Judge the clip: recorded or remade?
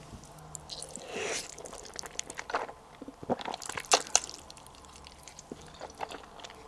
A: recorded